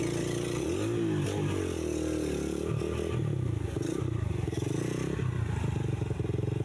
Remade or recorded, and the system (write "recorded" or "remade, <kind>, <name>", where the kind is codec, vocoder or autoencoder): recorded